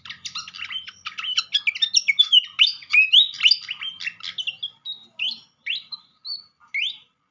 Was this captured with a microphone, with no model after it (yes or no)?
yes